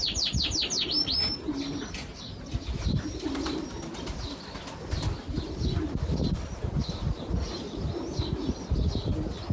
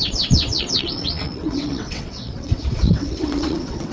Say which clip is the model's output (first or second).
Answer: second